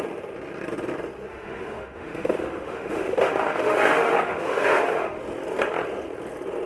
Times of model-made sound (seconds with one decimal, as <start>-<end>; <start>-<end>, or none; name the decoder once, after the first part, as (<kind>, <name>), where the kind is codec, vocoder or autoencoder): 1.3-5.2 (autoencoder, DAC-VAE)